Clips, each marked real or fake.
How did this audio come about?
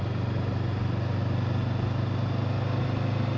real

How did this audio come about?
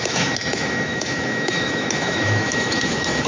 fake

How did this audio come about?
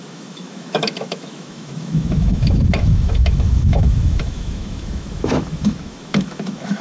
fake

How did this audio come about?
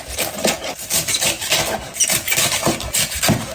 real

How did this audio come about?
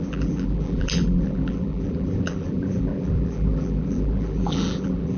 fake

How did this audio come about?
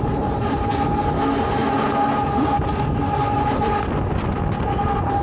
real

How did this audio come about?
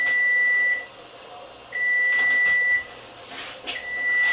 real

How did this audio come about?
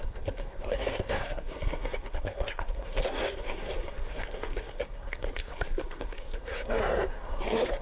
fake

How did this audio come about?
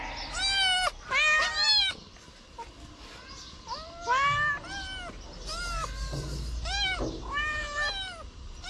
real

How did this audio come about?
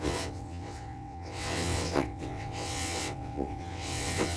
fake